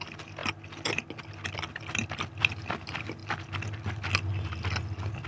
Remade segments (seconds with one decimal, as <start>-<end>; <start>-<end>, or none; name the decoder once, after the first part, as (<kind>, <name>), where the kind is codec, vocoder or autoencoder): none